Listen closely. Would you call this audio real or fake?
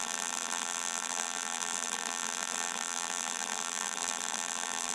fake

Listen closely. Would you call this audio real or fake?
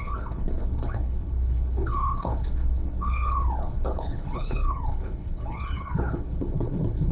fake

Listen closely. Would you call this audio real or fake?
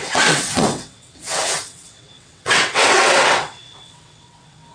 fake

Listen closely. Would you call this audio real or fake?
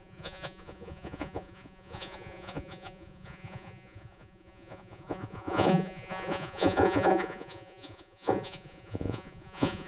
fake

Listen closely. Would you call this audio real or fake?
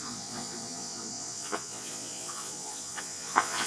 fake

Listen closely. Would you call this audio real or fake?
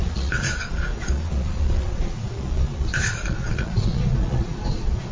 fake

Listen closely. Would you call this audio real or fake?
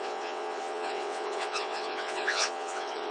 fake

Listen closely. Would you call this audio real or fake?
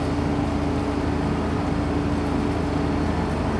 real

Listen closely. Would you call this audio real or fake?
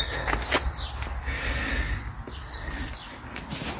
real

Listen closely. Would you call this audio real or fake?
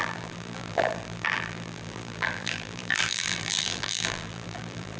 fake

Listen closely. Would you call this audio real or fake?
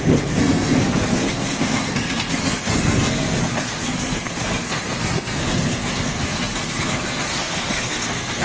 fake